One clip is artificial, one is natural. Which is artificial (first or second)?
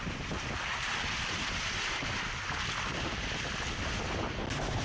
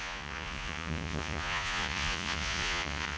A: second